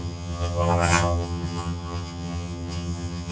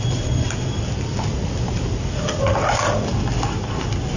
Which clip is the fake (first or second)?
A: first